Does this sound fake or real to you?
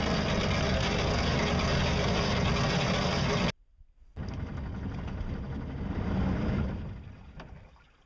real